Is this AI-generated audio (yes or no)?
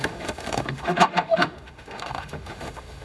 yes